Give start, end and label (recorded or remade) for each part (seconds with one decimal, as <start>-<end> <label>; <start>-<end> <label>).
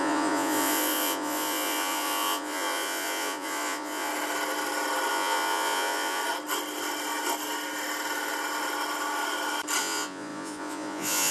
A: 0.0-4.1 remade; 4.1-5.1 recorded; 5.1-6.2 remade; 6.2-9.8 recorded; 9.8-11.3 remade